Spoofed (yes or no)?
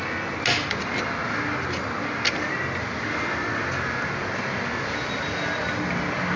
no